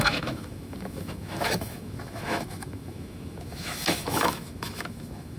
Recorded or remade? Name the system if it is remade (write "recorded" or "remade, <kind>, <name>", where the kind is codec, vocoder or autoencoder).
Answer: remade, autoencoder, DAC-VAE